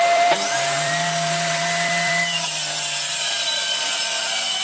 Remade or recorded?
remade